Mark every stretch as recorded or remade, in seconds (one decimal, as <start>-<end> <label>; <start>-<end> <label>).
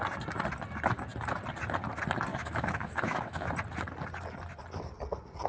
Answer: 0.0-2.3 recorded; 2.3-3.5 remade; 3.5-5.5 recorded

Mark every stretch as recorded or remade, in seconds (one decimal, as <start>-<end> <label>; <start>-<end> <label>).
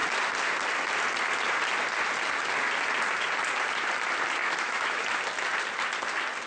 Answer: 0.0-4.4 recorded; 4.4-5.0 remade; 5.0-6.5 recorded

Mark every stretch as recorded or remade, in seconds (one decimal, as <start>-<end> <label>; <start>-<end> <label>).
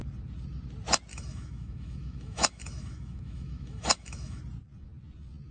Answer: 0.0-1.1 recorded; 1.1-4.4 remade; 4.4-5.5 recorded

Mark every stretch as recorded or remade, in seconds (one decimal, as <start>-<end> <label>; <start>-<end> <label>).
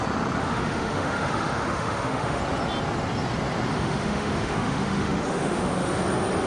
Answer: 0.0-0.4 recorded; 0.4-2.4 remade; 2.4-3.7 recorded; 3.7-6.0 remade; 6.0-6.5 recorded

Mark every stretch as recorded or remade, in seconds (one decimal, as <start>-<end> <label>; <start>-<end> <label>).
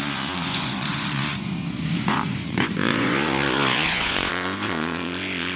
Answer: 0.0-5.6 remade